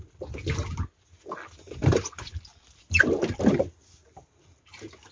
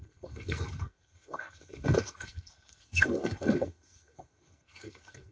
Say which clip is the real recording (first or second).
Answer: first